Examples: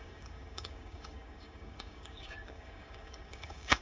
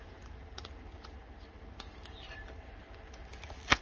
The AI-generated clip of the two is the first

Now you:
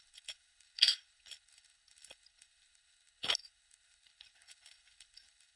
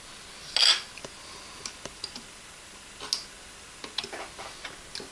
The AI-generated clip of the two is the first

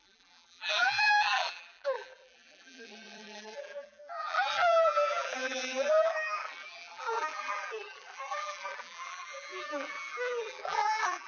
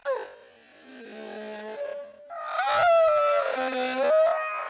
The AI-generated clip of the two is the first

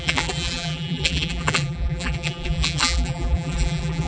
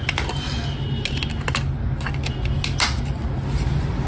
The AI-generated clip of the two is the first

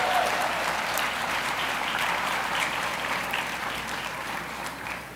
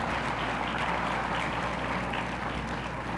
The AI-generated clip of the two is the first